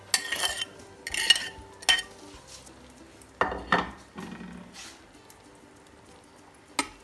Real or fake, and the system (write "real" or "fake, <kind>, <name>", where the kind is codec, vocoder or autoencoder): real